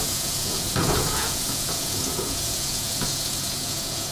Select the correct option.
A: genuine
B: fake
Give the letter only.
B